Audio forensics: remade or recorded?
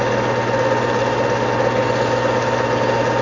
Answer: recorded